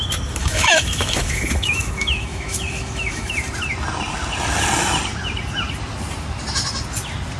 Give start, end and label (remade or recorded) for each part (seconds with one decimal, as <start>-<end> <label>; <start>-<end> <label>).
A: 0.0-0.4 recorded; 0.4-3.3 remade; 3.3-7.4 recorded